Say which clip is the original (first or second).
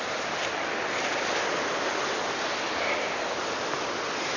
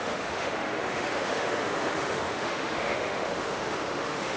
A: first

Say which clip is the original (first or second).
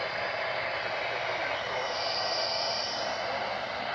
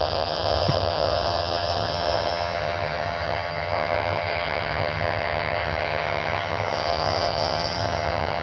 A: first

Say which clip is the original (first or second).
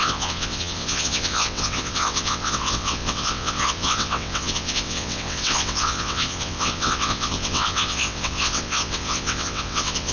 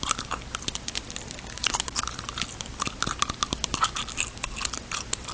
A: second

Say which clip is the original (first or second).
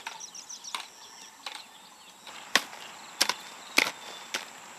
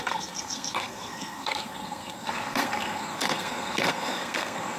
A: first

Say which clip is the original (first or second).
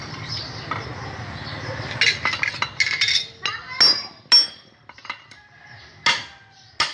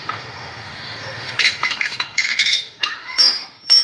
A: first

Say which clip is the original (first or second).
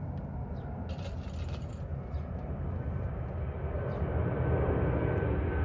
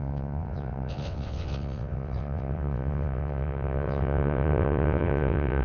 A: first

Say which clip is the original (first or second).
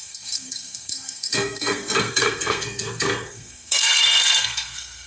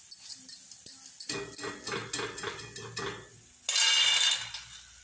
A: second